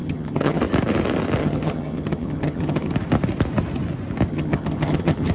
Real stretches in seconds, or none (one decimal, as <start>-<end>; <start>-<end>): 0.6-1.4; 2.9-4.3